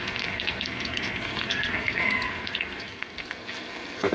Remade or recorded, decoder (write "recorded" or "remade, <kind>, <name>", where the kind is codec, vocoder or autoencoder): remade, codec, SNAC